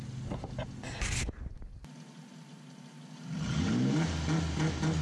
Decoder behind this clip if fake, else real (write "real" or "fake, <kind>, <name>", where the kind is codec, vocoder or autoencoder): real